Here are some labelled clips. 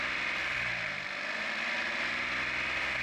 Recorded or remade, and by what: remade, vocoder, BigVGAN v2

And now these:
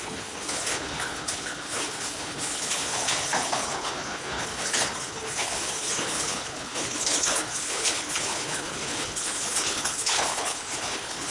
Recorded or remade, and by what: remade, codec, HILCodec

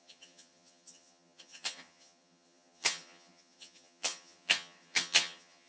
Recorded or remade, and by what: remade, vocoder, HiFi-GAN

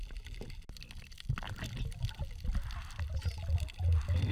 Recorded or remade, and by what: recorded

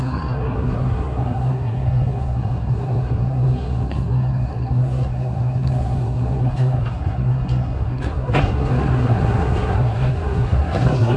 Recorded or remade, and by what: remade, codec, SNAC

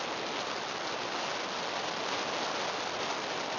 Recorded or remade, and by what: recorded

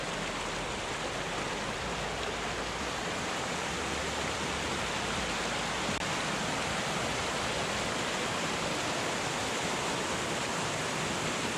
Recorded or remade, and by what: recorded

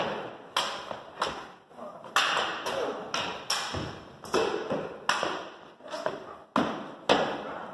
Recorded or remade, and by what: recorded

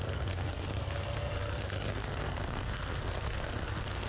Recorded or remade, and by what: remade, codec, SNAC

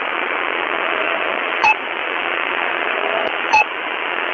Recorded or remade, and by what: remade, vocoder, Vocos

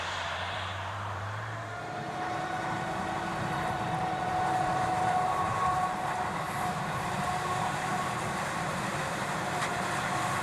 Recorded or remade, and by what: remade, vocoder, BigVGAN v2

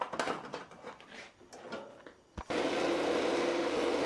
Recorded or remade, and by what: remade, vocoder, BigVGAN v2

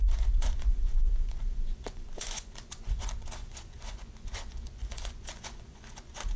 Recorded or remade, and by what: remade, vocoder, Vocos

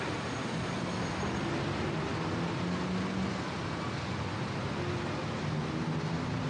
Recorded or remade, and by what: recorded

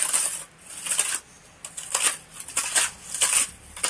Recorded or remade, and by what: recorded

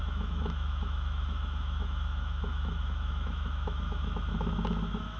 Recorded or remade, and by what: remade, autoencoder, DAC-VAE